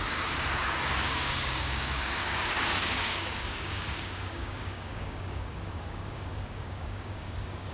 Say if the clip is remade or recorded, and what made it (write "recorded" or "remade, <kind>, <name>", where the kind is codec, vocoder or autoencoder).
remade, codec, DAC